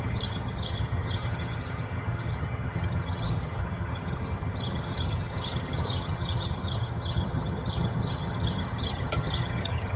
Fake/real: fake